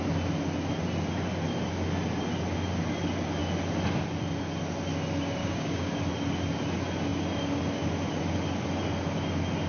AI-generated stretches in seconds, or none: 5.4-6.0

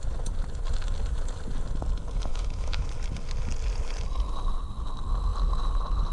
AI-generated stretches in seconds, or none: 2.3-2.9

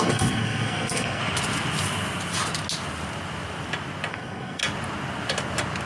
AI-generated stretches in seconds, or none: 0.0-1.2; 4.1-4.6

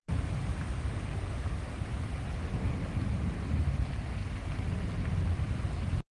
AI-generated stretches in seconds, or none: 0.0-1.1; 3.0-4.2; 5.4-6.1

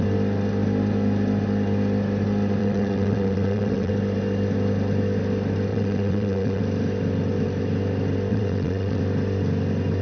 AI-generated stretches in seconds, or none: 2.6-3.9; 5.7-6.6; 8.3-9.0